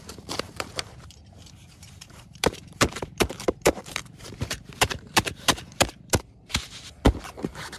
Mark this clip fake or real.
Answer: fake